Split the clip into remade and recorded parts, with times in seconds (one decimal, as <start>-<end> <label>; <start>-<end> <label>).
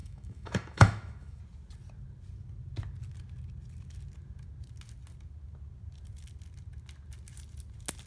0.0-1.4 remade; 1.4-8.1 recorded